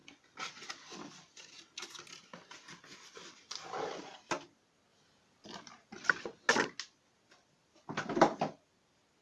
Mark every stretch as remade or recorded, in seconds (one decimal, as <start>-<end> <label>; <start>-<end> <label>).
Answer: 0.0-9.2 recorded